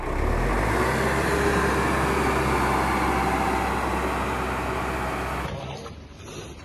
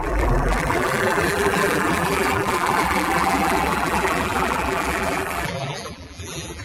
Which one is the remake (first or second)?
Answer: second